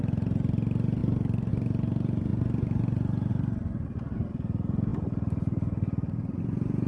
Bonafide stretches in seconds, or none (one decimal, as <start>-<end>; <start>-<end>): 0.0-6.9